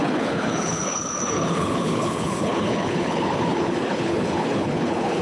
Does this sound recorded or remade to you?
remade